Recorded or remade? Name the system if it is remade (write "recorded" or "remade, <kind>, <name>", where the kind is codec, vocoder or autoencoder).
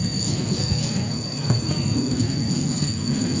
remade, codec, SNAC